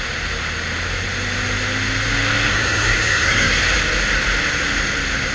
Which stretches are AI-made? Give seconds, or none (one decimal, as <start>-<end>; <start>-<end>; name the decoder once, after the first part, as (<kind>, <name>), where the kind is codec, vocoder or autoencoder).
2.5-3.6 (codec, SNAC)